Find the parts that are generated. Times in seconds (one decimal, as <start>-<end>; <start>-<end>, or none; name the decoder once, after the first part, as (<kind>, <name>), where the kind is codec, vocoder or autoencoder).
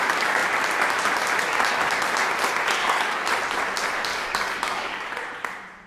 2.8-3.3 (codec, DAC); 4.1-5.1